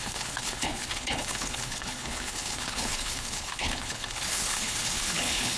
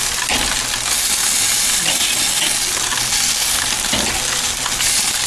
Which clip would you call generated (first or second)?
first